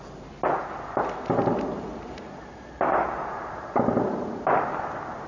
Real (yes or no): yes